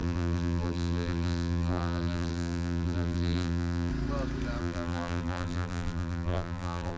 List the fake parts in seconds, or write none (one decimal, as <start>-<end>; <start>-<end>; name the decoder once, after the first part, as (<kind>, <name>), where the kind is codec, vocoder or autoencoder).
0.0-3.9 (vocoder, BigVGAN v2); 4.6-7.0